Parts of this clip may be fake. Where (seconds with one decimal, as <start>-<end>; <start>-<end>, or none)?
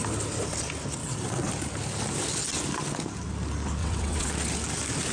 1.0-1.5; 3.8-4.3